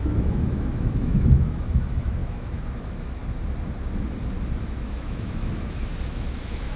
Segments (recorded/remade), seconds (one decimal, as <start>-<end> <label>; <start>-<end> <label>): 0.0-3.2 remade; 3.2-4.6 recorded; 4.6-6.8 remade